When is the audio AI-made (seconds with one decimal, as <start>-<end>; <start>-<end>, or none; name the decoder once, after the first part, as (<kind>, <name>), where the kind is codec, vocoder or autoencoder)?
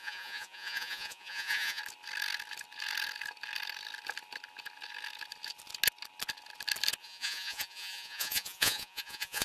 0.0-1.8 (vocoder, Vocos); 7.0-9.4